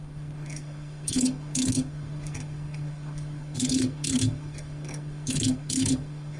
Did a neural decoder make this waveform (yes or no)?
yes